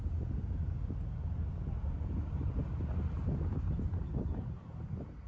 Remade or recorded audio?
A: recorded